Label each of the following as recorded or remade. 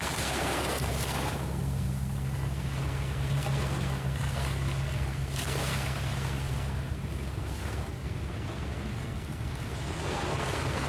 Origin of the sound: remade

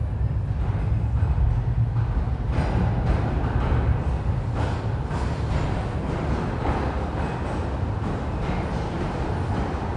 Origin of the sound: recorded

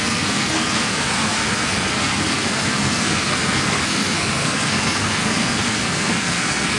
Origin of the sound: remade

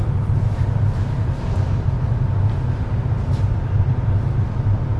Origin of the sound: recorded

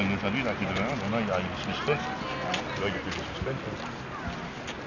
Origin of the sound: recorded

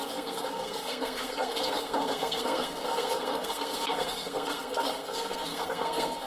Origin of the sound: remade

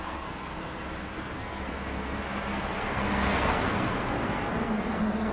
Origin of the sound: remade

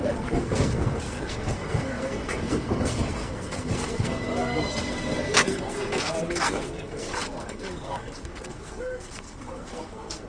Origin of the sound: remade